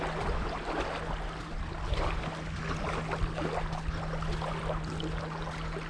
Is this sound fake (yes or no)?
no